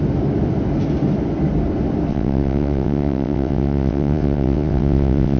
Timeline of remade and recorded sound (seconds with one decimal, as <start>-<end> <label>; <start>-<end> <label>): 0.0-2.1 recorded; 2.1-5.4 remade